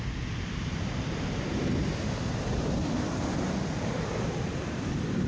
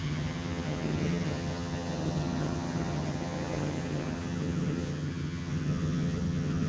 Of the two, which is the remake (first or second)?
second